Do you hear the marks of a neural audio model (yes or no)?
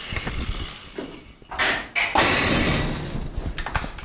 no